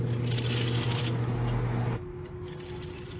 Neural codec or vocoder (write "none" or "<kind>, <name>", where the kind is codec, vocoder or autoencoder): none